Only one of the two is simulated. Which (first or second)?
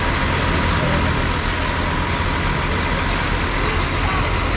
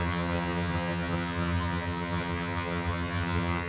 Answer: second